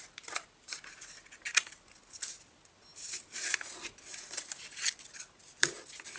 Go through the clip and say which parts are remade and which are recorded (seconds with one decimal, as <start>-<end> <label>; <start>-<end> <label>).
0.0-6.2 recorded